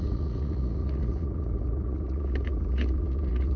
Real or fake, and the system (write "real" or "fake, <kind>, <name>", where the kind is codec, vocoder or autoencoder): fake, vocoder, Vocos